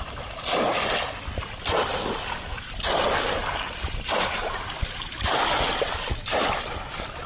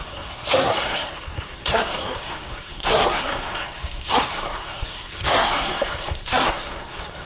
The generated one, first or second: second